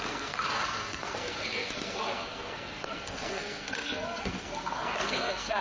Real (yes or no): no